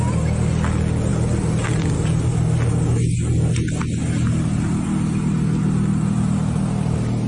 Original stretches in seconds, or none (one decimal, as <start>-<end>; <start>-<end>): 0.0-7.3

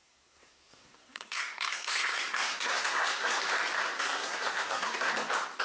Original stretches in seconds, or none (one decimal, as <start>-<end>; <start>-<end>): 3.4-3.8; 5.1-5.6

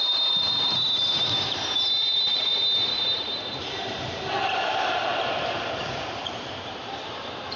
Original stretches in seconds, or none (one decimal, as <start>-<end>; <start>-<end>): 5.1-5.9

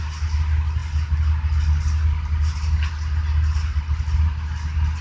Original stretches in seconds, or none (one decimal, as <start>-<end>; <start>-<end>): 0.0-5.0